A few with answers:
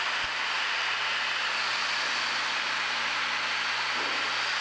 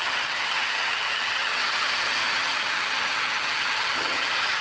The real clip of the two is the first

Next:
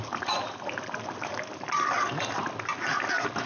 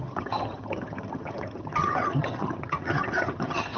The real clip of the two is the first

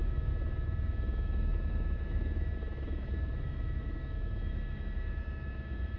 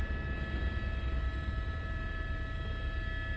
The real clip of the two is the second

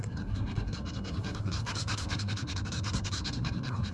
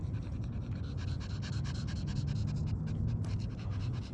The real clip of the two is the second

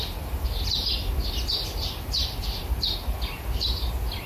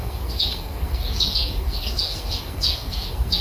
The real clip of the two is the first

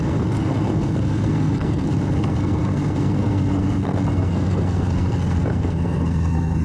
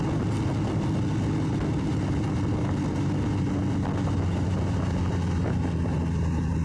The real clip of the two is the second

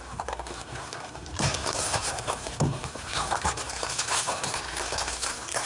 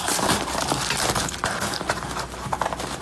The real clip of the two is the second